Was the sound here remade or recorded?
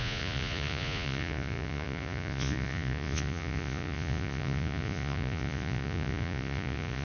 remade